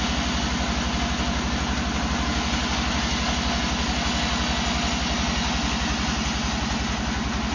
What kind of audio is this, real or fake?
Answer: real